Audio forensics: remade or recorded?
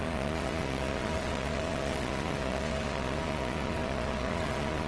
remade